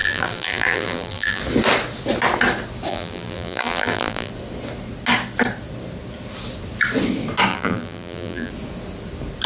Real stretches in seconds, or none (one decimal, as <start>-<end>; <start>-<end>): 1.4-2.9; 4.3-7.5; 8.5-9.5